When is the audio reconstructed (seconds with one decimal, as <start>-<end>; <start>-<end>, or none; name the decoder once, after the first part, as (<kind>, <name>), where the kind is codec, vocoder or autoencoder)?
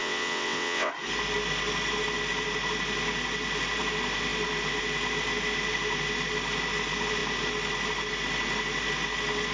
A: 0.0-0.9 (vocoder, WaveNeXt)